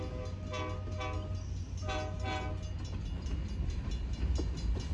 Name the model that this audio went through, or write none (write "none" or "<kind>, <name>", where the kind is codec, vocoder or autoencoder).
none